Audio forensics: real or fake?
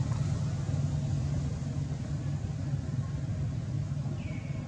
real